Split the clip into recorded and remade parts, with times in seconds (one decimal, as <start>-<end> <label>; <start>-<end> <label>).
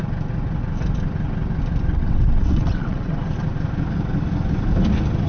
0.0-1.9 recorded; 1.9-3.2 remade; 3.2-5.3 recorded